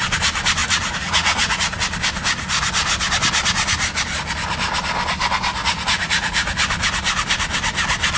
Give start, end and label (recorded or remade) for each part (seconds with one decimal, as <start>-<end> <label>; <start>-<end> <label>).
0.0-0.6 recorded; 0.6-1.7 remade; 1.7-5.6 recorded; 5.6-6.4 remade; 6.4-8.2 recorded